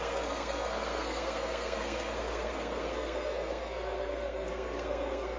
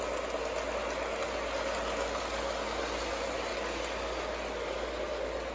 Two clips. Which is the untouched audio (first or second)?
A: second